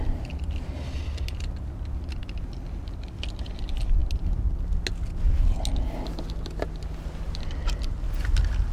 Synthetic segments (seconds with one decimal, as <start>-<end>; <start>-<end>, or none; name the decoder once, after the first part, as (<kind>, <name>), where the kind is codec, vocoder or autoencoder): none